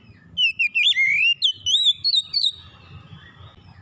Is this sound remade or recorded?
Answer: recorded